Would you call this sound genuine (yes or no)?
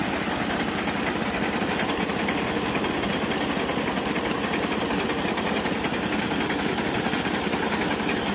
yes